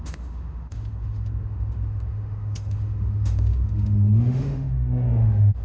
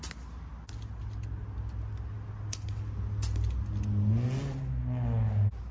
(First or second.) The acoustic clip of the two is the second